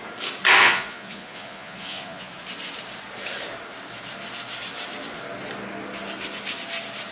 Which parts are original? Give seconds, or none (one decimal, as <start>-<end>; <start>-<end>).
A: 0.0-0.6; 2.3-7.1